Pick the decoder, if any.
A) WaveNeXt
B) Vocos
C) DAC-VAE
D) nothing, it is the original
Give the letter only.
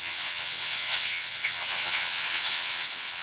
A